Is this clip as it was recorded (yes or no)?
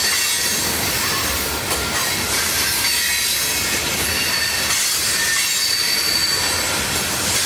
yes